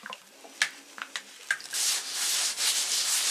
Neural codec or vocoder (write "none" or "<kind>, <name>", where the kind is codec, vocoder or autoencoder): none